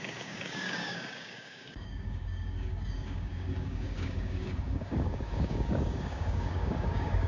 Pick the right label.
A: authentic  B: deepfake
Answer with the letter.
B